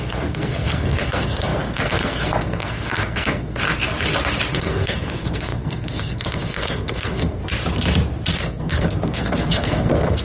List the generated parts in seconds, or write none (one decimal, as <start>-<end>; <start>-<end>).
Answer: 0.0-3.6; 4.5-7.4; 8.4-10.2